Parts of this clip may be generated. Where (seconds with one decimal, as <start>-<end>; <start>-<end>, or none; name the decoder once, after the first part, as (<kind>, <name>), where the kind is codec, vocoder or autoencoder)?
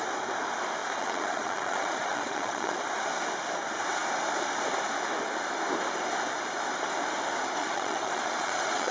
0.8-2.8 (vocoder, Vocos); 7.6-8.9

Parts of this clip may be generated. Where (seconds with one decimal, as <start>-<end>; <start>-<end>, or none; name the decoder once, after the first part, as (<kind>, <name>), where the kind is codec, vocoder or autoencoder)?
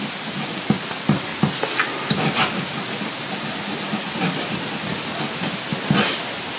none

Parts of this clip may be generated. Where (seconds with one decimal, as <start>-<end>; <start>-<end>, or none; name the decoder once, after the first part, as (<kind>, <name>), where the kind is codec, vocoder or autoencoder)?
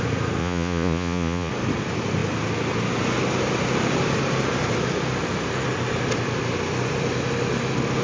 0.4-1.5 (vocoder, Vocos)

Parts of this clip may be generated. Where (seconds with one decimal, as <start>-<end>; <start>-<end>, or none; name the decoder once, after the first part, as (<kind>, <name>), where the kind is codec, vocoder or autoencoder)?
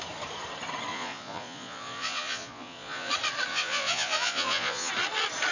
0.9-3.1 (vocoder, Vocos); 3.5-4.9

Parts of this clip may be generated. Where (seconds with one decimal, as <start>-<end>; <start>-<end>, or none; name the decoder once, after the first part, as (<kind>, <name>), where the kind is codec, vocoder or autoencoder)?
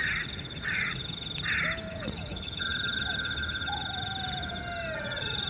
0.0-1.0 (vocoder, Vocos); 1.9-2.7; 5.0-5.5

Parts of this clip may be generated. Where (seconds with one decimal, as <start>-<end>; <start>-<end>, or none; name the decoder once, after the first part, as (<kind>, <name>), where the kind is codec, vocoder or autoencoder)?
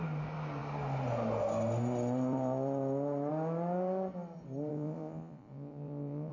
4.7-6.3 (vocoder, Vocos)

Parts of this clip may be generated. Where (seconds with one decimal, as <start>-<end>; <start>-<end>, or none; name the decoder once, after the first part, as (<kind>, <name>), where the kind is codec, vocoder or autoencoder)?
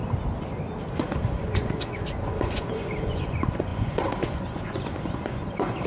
0.9-5.9 (vocoder, Vocos)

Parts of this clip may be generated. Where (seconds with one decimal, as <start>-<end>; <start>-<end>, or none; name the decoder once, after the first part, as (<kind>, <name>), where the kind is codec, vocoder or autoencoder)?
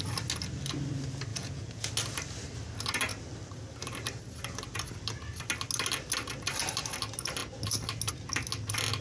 1.3-1.9 (vocoder, Vocos)